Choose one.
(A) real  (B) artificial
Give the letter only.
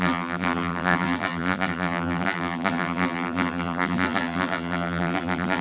B